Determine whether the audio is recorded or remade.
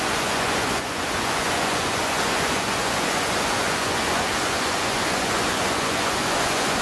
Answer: remade